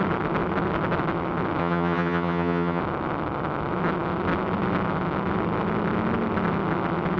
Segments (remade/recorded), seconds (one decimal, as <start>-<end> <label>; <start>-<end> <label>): 0.0-1.6 recorded; 1.6-2.8 remade; 2.8-7.2 recorded